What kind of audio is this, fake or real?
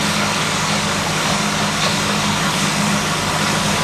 fake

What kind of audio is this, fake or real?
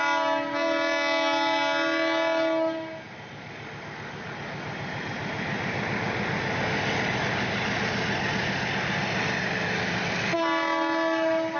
real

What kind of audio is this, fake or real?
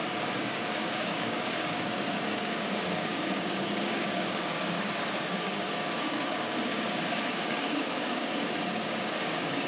fake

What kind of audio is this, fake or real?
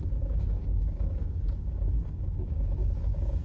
fake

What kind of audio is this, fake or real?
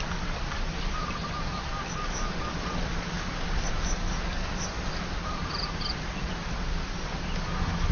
real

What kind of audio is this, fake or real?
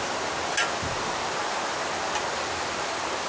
real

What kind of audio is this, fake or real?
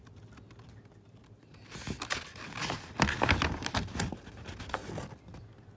real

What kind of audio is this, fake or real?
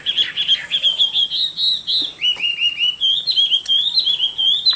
real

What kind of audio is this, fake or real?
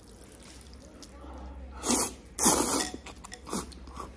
real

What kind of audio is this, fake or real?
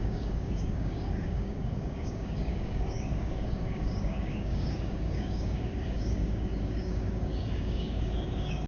fake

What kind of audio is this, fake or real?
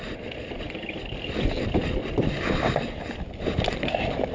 real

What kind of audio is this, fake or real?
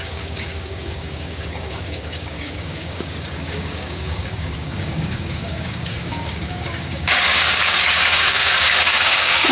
fake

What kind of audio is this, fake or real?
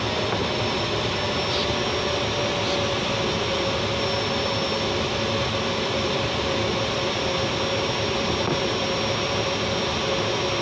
real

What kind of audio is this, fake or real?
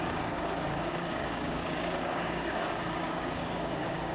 fake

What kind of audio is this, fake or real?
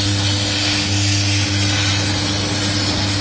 real